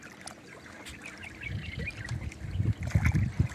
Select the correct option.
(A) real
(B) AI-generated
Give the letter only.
A